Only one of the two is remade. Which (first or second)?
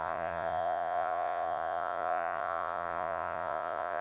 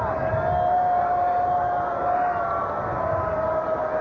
first